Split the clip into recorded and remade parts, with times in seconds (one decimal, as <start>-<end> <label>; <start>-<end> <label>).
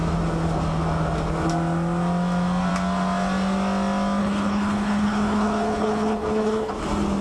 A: 0.0-4.2 recorded; 4.2-6.7 remade; 6.7-7.2 recorded